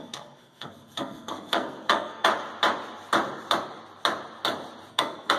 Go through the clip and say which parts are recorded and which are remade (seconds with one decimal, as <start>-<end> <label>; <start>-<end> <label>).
0.0-2.3 remade; 2.3-4.9 recorded; 4.9-5.4 remade